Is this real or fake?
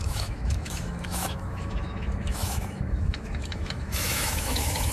fake